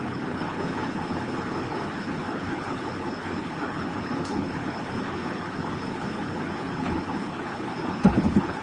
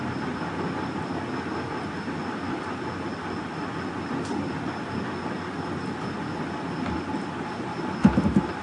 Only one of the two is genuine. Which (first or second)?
second